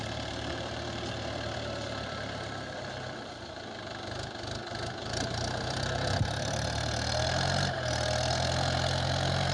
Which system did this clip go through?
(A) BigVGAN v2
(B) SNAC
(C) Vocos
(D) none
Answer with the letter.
A